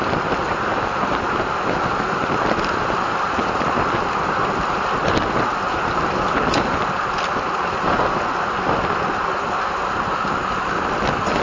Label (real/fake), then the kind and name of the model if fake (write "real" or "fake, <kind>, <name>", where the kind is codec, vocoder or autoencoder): real